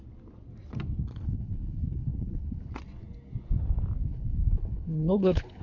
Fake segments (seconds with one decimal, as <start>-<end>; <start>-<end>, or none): 1.1-2.7; 4.0-5.6